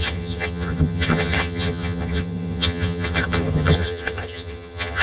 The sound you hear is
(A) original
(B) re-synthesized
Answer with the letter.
B